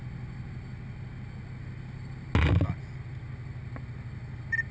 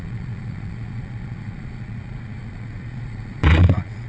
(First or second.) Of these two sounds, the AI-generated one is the second